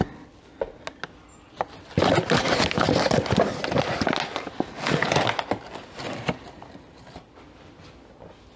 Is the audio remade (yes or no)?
no